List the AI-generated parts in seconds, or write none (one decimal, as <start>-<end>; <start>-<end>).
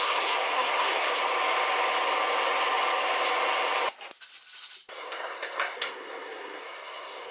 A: 0.0-1.2; 4.9-7.3